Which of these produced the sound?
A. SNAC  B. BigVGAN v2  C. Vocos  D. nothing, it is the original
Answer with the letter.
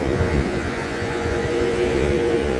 C